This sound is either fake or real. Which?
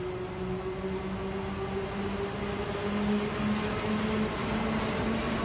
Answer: real